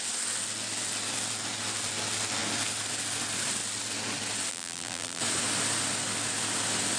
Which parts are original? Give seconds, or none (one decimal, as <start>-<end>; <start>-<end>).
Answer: 0.0-4.5; 5.2-7.0